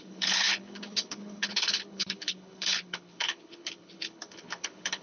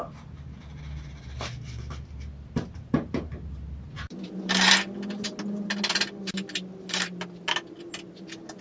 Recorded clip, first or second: second